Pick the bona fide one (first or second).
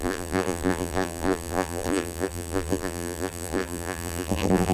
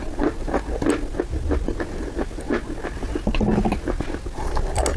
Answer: second